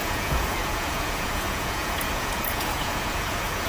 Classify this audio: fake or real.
fake